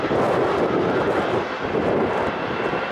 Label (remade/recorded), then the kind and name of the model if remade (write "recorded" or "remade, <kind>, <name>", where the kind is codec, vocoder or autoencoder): recorded